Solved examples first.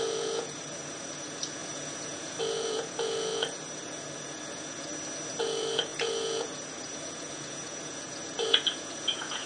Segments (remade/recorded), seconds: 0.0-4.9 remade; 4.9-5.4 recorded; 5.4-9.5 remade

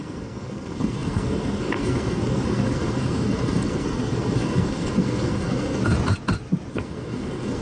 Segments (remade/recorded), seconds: 0.0-5.8 remade; 5.8-6.7 recorded; 6.7-7.6 remade

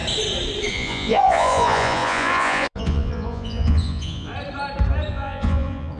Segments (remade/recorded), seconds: 0.0-0.7 recorded; 0.7-4.3 remade; 4.3-5.1 recorded; 5.1-6.0 remade

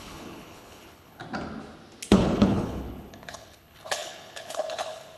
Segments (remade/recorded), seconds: 0.0-1.2 remade; 1.2-2.1 recorded; 2.1-5.2 remade

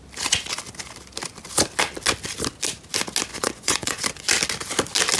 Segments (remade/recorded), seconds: 0.0-3.3 recorded; 3.3-4.0 remade; 4.0-5.2 recorded

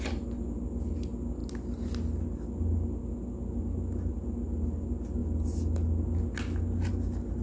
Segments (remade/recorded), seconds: 0.0-7.4 recorded

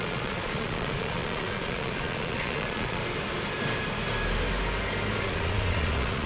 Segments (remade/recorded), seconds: 0.0-3.0 remade; 3.0-5.2 recorded; 5.2-6.3 remade